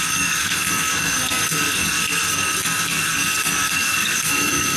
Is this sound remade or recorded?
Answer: remade